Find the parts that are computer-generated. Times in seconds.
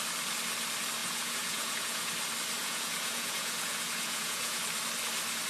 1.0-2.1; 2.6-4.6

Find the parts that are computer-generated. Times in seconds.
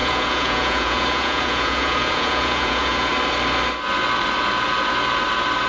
0.0-3.1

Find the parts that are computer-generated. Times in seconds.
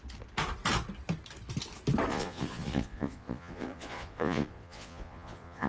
2.1-5.7